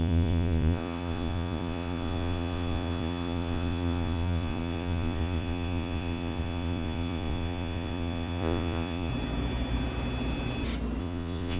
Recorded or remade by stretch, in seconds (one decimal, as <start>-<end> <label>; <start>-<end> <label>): 0.0-9.1 remade; 9.1-11.0 recorded; 11.0-11.6 remade